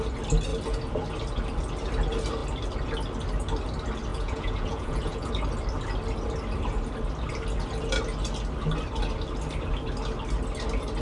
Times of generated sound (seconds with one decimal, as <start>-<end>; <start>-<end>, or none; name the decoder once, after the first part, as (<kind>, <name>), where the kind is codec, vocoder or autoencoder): 4.1-5.3 (vocoder, Vocos)